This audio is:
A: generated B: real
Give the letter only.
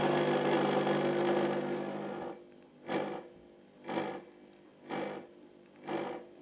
B